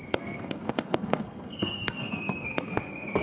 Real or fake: fake